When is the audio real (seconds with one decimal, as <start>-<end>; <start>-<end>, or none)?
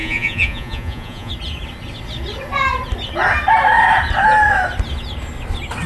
1.3-5.9